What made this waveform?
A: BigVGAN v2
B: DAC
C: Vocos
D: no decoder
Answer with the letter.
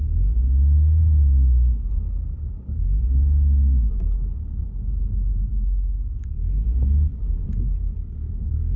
D